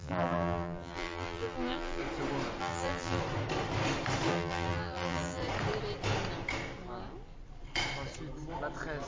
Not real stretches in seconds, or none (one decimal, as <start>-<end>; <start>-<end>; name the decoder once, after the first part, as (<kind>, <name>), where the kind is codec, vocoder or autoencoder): 0.0-2.0 (vocoder, BigVGAN v2); 2.6-3.2; 4.3-5.4